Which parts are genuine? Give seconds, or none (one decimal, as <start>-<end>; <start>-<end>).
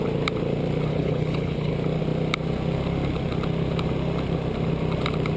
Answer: 0.0-0.9; 1.7-5.4